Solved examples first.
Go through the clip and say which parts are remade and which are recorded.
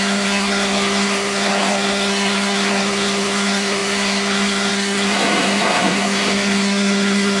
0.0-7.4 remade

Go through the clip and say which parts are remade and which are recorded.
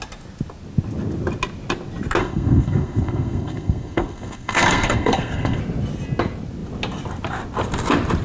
0.0-2.2 recorded; 2.2-5.6 remade; 5.6-8.2 recorded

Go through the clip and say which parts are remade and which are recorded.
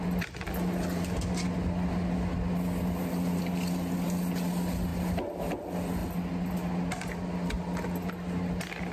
0.0-8.9 recorded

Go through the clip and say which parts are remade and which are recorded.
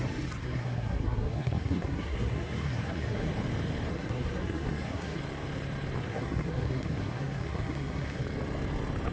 0.0-0.4 recorded; 0.4-3.3 remade; 3.3-3.9 recorded; 3.9-5.2 remade; 5.2-6.0 recorded; 6.0-8.2 remade; 8.2-9.1 recorded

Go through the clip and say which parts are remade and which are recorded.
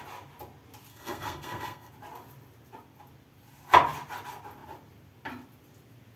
0.0-0.9 recorded; 0.9-1.9 remade; 1.9-6.2 recorded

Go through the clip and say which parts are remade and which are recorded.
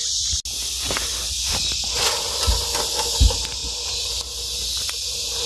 0.0-5.5 recorded